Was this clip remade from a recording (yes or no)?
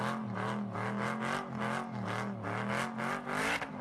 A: no